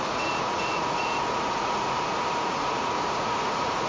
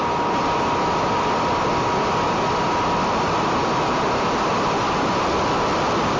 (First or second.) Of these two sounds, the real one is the second